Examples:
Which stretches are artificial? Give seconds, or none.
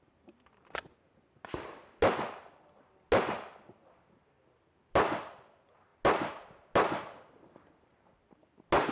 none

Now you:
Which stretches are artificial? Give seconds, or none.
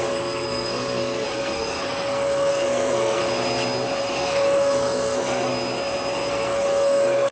0.0-3.2 (codec, SNAC); 4.0-5.5; 6.3-7.3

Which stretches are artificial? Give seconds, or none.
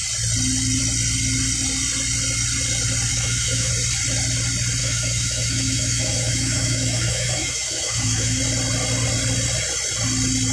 3.1-3.7 (autoencoder, DAC-VAE); 4.8-8.4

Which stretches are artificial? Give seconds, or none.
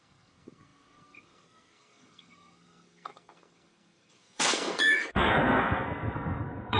0.0-6.8 (codec, SNAC)